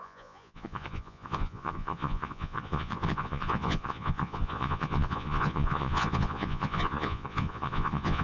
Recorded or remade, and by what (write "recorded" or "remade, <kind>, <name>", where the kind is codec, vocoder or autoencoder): remade, vocoder, Vocos